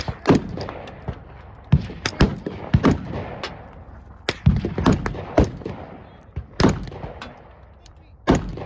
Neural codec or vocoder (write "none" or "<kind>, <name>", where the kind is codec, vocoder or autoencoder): none